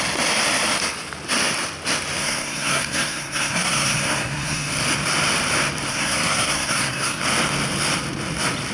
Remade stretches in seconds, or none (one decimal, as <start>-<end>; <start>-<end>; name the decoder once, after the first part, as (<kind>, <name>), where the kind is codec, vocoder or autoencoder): 2.2-4.7 (codec, SNAC); 5.9-7.2